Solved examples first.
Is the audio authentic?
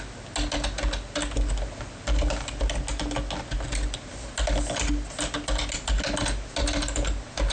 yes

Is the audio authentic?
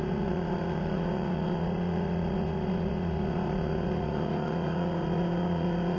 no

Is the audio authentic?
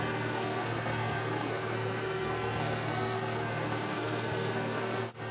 no